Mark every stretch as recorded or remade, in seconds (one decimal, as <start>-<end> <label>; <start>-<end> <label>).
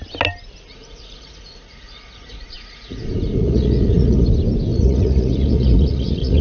0.0-0.7 recorded; 0.7-4.3 remade; 4.3-4.7 recorded; 4.7-6.4 remade